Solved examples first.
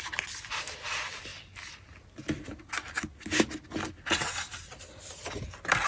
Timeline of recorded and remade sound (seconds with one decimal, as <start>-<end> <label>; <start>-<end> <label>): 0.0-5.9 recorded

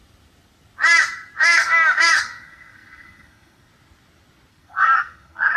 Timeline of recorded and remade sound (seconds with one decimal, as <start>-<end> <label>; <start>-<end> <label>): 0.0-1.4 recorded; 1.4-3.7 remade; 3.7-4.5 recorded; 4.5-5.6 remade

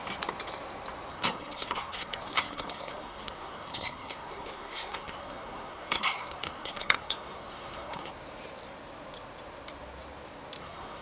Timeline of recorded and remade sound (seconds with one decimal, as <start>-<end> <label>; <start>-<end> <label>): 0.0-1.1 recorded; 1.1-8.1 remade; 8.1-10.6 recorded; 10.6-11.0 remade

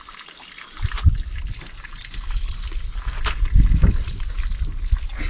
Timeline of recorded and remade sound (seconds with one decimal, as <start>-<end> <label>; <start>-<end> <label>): 0.0-5.3 recorded

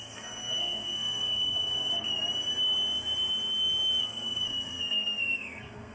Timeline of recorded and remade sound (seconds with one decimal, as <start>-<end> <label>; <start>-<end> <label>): 0.0-1.9 remade; 1.9-4.0 recorded; 4.0-5.9 remade

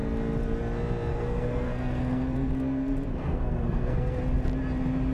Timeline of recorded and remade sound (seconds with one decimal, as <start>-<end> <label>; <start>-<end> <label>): 0.0-1.1 recorded; 1.1-4.2 remade; 4.2-5.1 recorded

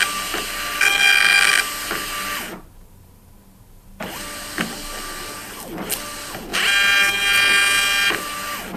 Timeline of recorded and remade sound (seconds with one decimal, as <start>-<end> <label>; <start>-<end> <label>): 0.0-8.8 recorded